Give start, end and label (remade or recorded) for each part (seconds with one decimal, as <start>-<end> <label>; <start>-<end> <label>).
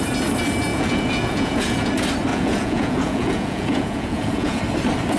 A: 0.0-0.7 recorded; 0.7-1.9 remade; 1.9-2.3 recorded; 2.3-4.6 remade; 4.6-5.2 recorded